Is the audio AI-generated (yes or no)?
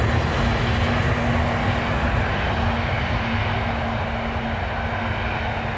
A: no